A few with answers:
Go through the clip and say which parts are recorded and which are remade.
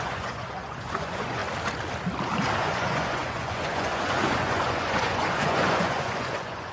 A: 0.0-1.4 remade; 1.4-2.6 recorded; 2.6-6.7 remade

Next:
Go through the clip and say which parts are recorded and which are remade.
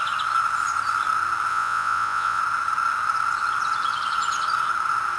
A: 0.0-1.5 recorded; 1.5-2.4 remade; 2.4-5.2 recorded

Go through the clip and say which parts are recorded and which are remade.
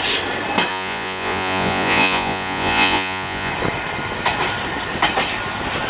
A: 0.0-0.7 recorded; 0.7-3.5 remade; 3.5-5.9 recorded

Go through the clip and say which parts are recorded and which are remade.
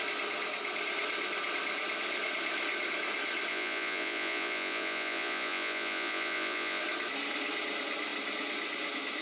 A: 0.0-3.5 recorded; 3.5-6.8 remade; 6.8-9.2 recorded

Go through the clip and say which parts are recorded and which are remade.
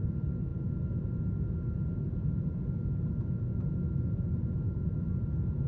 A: 0.0-5.7 recorded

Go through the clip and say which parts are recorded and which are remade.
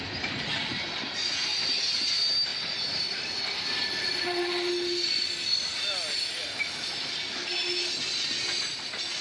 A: 0.0-9.2 recorded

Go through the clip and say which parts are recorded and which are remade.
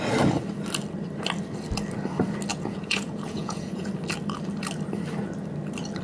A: 0.0-2.5 recorded; 2.5-3.9 remade; 3.9-6.0 recorded